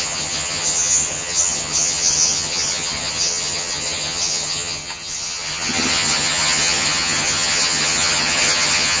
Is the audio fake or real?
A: fake